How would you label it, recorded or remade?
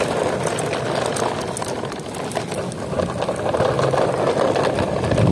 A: recorded